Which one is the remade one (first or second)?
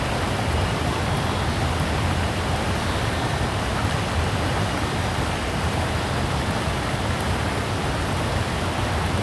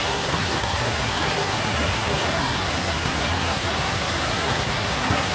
second